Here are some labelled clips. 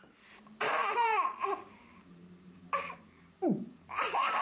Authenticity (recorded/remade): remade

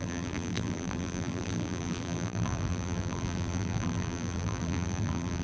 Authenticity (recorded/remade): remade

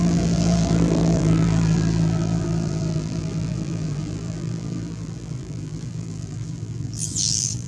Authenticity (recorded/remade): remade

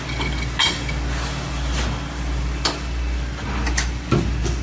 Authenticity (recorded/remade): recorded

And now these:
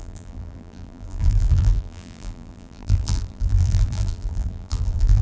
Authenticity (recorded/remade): remade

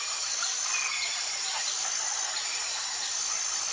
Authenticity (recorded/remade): remade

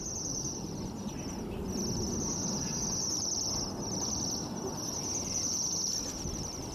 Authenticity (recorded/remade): recorded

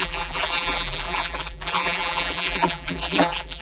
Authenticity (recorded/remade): remade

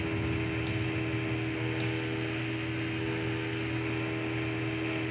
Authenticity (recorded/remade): recorded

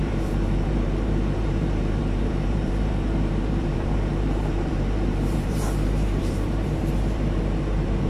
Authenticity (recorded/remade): remade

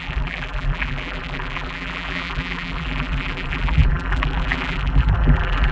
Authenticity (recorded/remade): remade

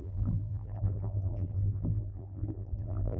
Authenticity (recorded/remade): remade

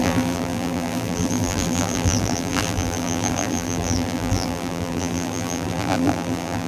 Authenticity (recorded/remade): remade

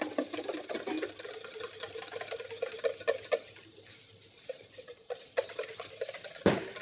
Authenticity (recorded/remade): recorded